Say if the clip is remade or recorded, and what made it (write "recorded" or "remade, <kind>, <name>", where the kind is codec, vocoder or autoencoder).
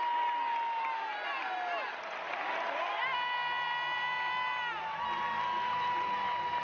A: recorded